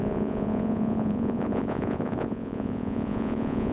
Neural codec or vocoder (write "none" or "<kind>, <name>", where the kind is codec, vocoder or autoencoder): vocoder, Vocos